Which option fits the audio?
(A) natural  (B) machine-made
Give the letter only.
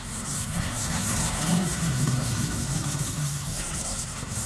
B